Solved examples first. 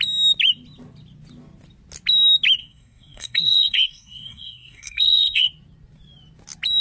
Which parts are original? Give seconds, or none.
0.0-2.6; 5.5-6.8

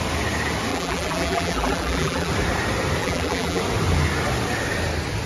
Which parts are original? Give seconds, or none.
0.0-0.7; 2.3-3.0; 3.6-5.3

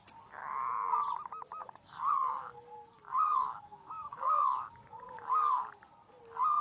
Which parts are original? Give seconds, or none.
0.0-1.6; 5.6-6.6

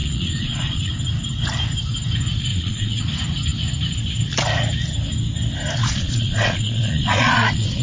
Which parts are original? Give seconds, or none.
0.9-2.5; 3.0-5.8

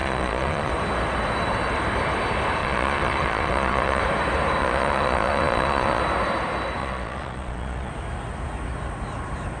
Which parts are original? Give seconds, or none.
0.7-2.6; 4.0-4.6; 6.0-6.8; 7.9-9.6